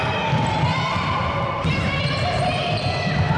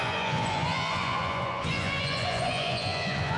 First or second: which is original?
first